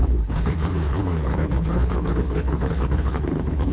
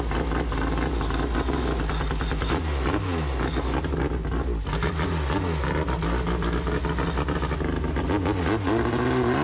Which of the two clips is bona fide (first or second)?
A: second